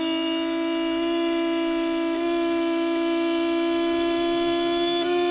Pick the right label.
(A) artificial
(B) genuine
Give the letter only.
B